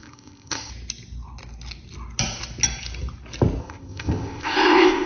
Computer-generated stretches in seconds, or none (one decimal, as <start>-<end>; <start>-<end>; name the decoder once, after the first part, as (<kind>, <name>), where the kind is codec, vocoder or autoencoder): 0.0-0.7 (codec, ZipCodec); 3.6-5.1